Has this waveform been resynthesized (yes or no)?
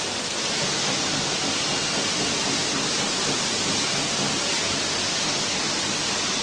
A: no